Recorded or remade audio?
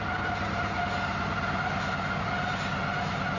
recorded